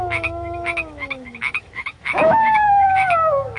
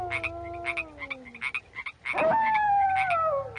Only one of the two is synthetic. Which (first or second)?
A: first